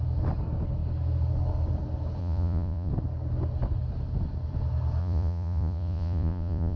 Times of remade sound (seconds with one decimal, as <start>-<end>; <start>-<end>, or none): 2.2-2.9; 5.0-6.8